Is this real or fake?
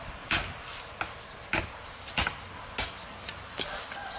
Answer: real